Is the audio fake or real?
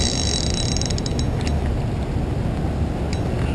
real